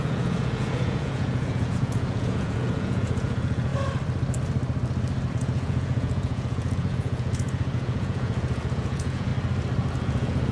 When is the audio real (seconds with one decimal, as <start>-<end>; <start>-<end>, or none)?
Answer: 3.7-5.3; 9.3-9.9